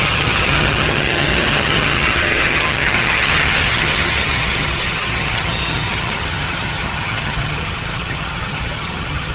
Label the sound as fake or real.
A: fake